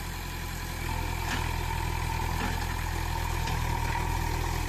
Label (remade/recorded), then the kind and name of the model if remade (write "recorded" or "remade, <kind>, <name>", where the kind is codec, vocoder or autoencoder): recorded